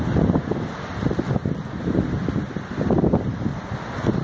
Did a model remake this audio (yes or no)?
no